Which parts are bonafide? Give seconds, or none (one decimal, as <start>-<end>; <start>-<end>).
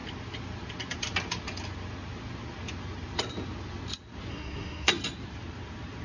0.0-4.3; 4.9-6.0